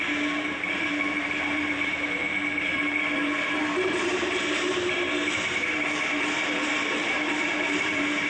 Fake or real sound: fake